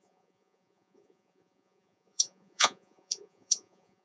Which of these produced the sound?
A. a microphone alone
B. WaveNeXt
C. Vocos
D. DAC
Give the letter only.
C